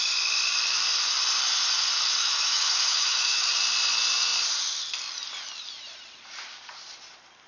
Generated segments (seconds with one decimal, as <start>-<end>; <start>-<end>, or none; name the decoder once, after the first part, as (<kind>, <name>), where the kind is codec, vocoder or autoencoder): 2.2-3.5 (autoencoder, DAC-VAE)